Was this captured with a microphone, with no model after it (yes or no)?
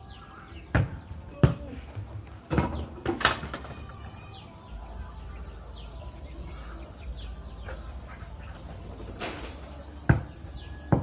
yes